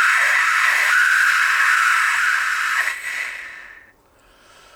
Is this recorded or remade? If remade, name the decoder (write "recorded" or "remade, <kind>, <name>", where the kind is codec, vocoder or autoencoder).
recorded